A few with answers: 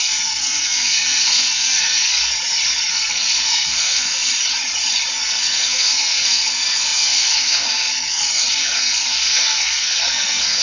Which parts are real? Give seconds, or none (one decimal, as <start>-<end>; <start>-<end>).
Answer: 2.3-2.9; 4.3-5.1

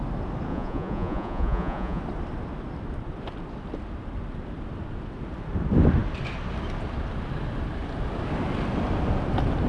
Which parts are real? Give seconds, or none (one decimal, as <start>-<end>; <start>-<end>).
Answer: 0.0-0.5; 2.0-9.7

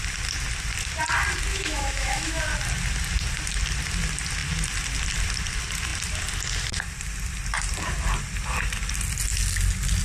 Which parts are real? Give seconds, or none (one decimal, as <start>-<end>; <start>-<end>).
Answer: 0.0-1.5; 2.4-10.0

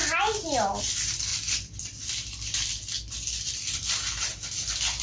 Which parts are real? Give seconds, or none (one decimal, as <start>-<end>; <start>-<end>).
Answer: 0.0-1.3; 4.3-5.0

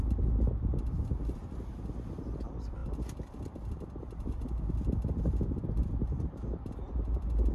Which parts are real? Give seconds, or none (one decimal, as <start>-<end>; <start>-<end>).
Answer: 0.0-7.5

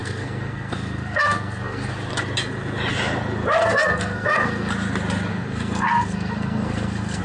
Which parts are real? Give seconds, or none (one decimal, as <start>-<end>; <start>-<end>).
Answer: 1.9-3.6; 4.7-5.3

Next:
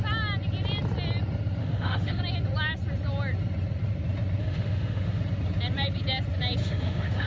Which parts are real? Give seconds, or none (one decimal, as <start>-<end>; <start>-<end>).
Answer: 0.0-1.6; 2.2-4.4; 5.2-6.6

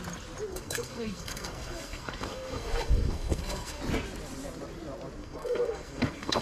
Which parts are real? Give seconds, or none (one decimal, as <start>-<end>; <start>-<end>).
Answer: 0.0-0.5; 3.8-5.2